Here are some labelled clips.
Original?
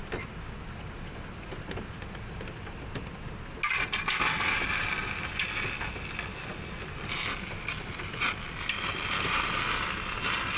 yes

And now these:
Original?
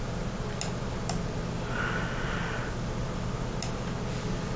yes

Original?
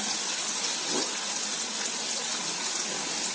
yes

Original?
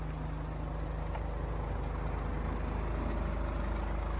yes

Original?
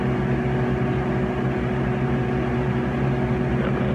yes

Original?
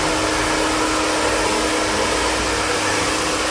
yes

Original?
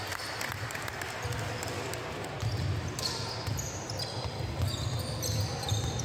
yes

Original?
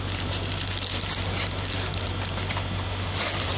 yes